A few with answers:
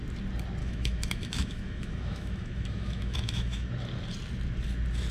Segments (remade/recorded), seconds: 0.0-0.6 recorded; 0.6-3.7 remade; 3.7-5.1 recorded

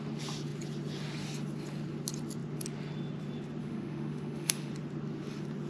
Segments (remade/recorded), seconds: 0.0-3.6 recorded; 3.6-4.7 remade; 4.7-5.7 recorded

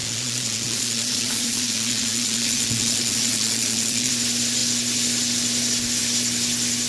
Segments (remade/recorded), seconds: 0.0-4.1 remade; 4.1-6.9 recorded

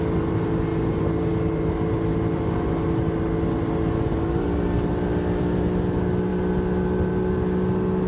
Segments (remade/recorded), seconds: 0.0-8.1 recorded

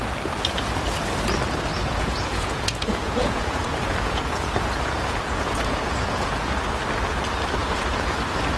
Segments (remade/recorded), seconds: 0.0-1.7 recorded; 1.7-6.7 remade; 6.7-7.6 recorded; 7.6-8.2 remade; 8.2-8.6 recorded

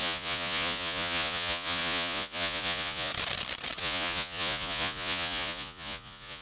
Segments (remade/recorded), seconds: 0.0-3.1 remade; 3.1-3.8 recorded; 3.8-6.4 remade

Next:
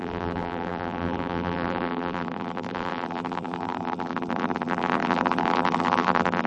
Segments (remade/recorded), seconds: 0.0-6.5 remade

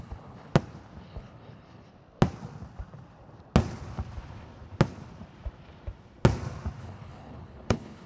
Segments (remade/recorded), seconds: 0.0-0.5 remade; 0.5-1.0 recorded; 1.0-1.9 remade; 1.9-6.8 recorded; 6.8-8.1 remade